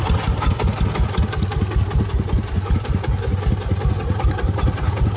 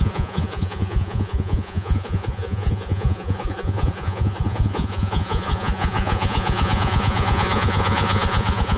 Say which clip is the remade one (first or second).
second